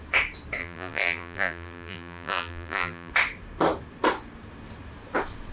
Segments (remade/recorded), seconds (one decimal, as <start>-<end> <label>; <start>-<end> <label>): 0.0-0.6 recorded; 0.6-3.1 remade; 3.1-5.5 recorded